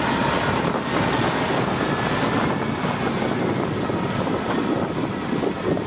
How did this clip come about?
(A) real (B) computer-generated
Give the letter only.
A